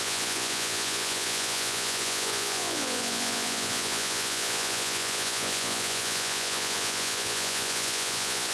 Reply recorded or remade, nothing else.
remade